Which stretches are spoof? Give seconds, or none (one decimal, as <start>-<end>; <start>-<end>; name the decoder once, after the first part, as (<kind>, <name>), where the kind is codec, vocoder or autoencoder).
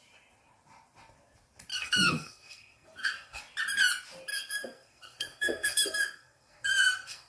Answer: 1.7-3.4 (codec, SNAC); 4.3-7.3